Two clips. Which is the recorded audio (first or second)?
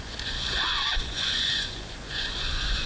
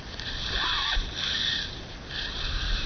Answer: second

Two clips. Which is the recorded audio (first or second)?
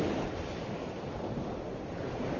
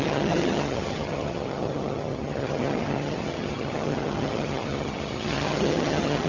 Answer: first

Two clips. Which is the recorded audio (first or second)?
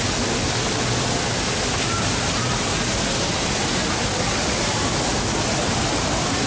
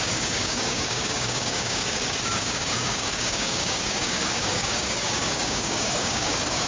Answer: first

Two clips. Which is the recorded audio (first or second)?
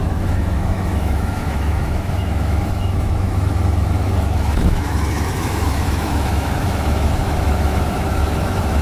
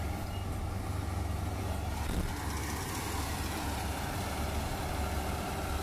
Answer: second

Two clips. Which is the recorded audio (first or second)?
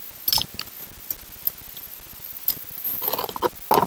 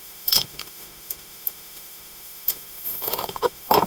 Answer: first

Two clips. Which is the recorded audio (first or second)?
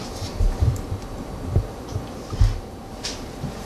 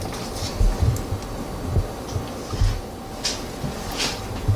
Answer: second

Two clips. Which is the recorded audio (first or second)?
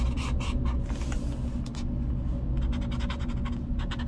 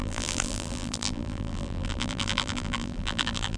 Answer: first